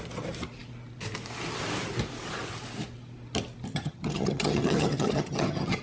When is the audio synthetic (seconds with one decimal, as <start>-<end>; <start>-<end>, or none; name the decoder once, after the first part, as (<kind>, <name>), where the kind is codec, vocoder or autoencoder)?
3.7-5.8 (vocoder, HiFi-GAN)